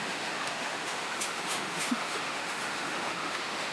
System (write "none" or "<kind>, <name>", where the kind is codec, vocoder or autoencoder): autoencoder, DAC-VAE